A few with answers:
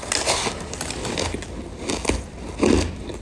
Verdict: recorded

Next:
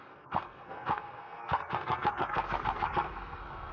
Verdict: remade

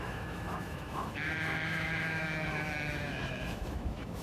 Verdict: remade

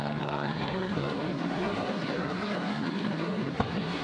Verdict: remade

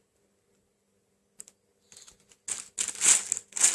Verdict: recorded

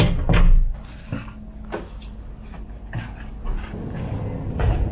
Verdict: recorded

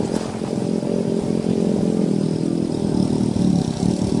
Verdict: recorded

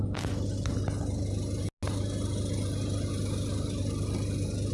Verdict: recorded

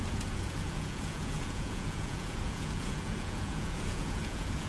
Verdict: remade